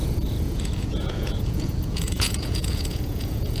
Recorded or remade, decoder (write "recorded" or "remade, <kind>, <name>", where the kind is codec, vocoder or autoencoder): remade, vocoder, Vocos